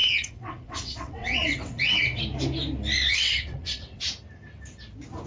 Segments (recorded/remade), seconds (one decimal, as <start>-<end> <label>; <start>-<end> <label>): 0.0-2.2 remade; 2.2-3.1 recorded; 3.1-4.0 remade; 4.0-5.3 recorded